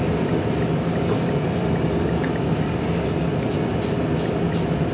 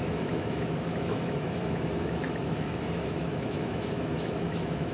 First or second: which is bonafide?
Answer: first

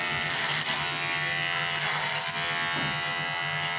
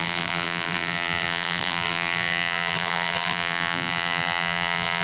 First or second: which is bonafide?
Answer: first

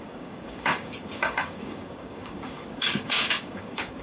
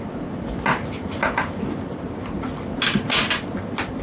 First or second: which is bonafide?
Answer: second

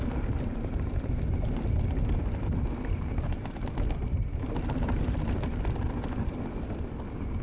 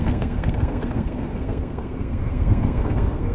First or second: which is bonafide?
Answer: first